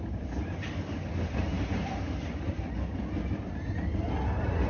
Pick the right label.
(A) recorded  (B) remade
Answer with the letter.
A